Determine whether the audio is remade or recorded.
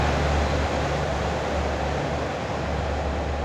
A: recorded